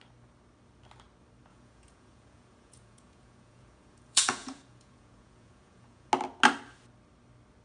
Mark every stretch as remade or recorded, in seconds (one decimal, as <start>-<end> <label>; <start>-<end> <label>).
0.0-1.5 recorded; 1.5-6.1 remade; 6.1-7.6 recorded

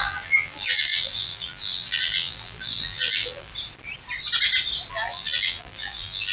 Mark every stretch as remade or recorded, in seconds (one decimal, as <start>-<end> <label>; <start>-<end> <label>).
0.0-3.5 remade; 3.5-4.9 recorded; 4.9-6.3 remade

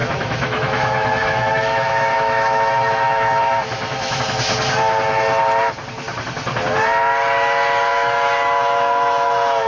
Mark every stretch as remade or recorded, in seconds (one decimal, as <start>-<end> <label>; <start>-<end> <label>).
0.0-4.2 remade; 4.2-7.9 recorded; 7.9-9.7 remade

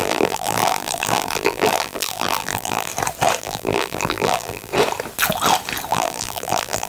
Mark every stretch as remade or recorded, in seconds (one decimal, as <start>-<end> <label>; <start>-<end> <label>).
0.0-2.9 remade; 2.9-3.4 recorded; 3.4-4.7 remade; 4.7-5.9 recorded; 5.9-6.9 remade

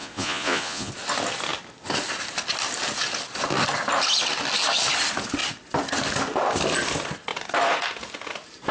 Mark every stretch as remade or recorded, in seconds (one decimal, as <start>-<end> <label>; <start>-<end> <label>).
0.0-0.9 remade; 0.9-8.7 recorded